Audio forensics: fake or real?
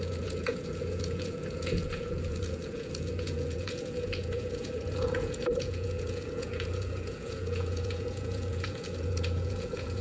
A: fake